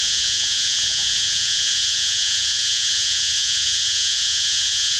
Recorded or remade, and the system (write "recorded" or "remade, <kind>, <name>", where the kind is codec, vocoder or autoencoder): remade, vocoder, Vocos